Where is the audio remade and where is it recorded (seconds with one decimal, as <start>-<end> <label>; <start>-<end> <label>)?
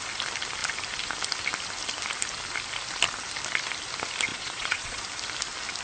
0.0-4.3 recorded; 4.3-5.0 remade; 5.0-5.8 recorded